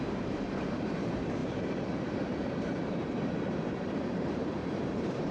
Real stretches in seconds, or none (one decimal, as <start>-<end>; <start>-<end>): none